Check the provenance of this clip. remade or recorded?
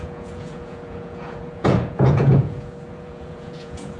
remade